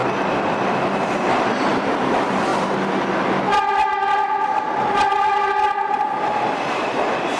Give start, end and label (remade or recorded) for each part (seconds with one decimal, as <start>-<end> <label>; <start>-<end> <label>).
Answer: 0.0-1.3 recorded; 1.3-2.5 remade; 2.5-6.8 recorded; 6.8-7.4 remade